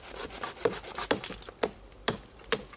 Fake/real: real